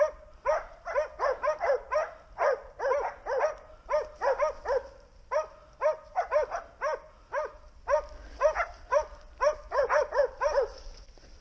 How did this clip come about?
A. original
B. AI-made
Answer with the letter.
A